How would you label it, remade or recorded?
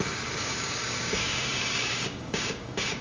remade